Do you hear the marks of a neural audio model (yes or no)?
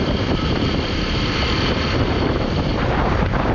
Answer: yes